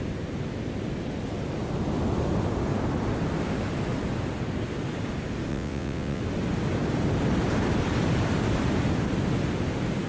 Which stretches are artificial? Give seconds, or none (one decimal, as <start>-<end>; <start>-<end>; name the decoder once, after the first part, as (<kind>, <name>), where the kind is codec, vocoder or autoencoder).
5.5-6.2 (vocoder, WaveNeXt)

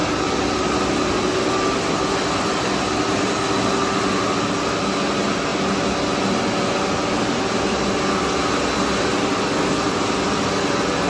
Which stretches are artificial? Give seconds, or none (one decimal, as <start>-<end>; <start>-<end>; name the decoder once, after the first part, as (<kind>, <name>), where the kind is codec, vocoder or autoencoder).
none

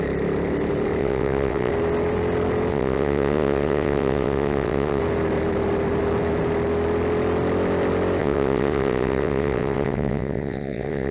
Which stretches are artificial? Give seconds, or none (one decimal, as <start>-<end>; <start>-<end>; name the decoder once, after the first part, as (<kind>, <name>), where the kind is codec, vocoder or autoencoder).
1.0-1.7 (vocoder, WaveNeXt); 2.7-5.0; 8.2-11.1

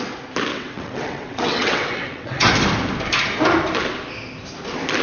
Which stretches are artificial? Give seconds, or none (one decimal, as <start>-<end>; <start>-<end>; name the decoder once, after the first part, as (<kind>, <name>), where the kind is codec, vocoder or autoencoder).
0.5-2.5 (vocoder, WaveNeXt)

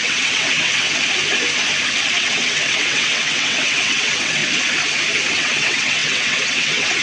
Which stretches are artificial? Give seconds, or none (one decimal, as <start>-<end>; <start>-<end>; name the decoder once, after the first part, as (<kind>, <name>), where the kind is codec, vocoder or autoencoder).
0.0-0.9 (vocoder, WaveNeXt); 2.2-4.4; 5.3-7.0